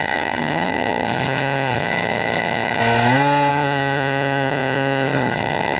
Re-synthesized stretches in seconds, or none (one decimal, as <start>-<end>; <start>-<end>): 0.0-2.8; 3.5-5.8